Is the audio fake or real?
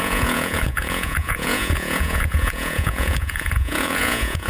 fake